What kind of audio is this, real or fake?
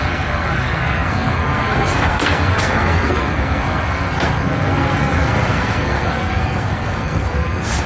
fake